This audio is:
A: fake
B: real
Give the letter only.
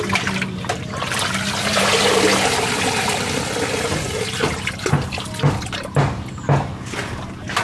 B